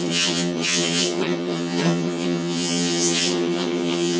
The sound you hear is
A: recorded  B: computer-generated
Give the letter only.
B